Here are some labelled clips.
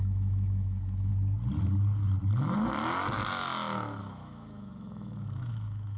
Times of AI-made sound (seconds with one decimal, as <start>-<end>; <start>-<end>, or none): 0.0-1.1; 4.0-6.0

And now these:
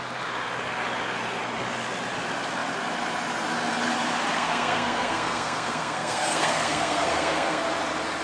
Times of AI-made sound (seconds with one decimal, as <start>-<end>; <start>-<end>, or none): 4.3-7.6

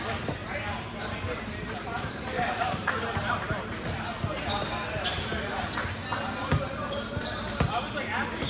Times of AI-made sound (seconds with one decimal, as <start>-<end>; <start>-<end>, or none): 0.4-3.3; 6.4-7.6

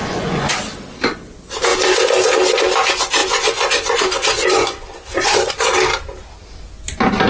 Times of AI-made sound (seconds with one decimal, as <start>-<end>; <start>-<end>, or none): 0.0-0.5; 3.2-5.5